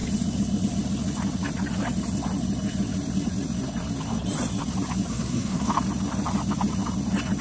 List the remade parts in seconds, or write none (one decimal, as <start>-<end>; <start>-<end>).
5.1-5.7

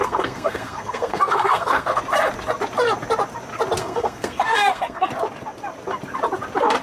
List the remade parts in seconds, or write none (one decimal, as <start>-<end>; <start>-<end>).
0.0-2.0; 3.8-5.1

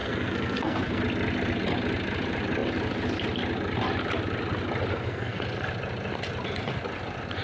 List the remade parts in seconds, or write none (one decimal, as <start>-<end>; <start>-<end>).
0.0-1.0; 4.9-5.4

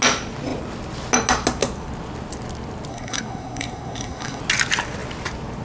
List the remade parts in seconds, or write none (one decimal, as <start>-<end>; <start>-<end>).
2.9-4.4